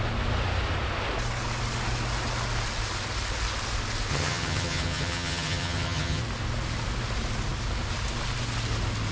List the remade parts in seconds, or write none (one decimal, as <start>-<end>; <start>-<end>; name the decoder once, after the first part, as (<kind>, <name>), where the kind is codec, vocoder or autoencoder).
4.1-6.2 (vocoder, HiFi-GAN)